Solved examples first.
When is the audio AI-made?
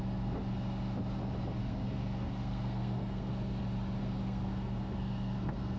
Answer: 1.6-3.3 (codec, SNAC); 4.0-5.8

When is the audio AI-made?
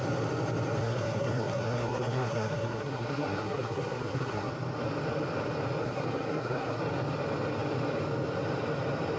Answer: 0.8-4.5 (codec, SNAC); 5.8-6.8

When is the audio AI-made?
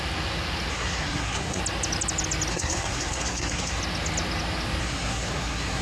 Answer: 0.7-1.6 (codec, SNAC); 2.5-3.8; 4.8-5.8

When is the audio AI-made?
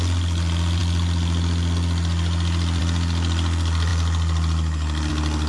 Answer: none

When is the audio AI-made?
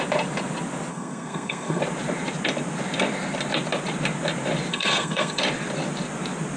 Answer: 0.9-1.8 (codec, SNAC); 4.7-5.4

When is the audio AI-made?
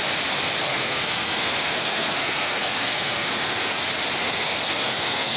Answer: 0.6-3.8 (codec, SNAC); 4.2-5.4